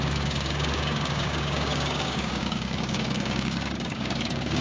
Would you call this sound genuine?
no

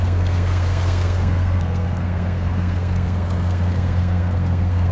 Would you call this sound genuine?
no